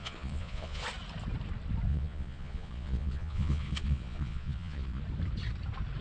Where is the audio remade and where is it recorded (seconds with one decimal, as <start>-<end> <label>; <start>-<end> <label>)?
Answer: 0.0-0.8 remade; 0.8-1.9 recorded; 1.9-5.0 remade; 5.0-6.0 recorded